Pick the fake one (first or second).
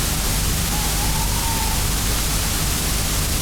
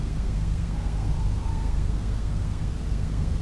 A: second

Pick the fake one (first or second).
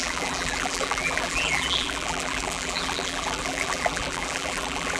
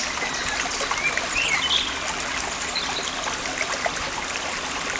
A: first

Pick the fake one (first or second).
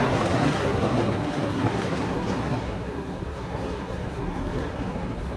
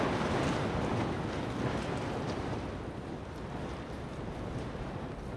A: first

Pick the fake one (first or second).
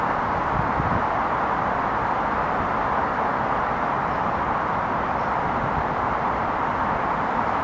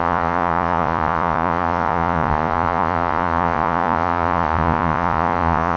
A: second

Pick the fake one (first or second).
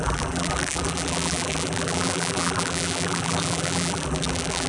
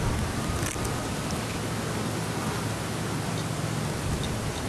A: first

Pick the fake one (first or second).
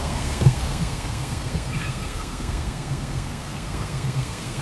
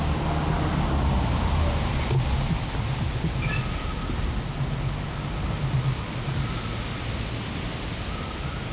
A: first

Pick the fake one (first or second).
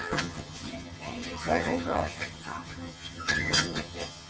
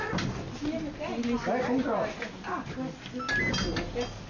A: first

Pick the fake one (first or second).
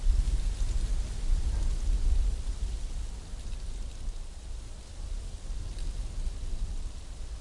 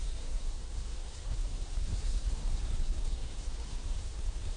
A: second